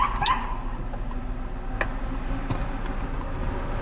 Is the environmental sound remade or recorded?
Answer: recorded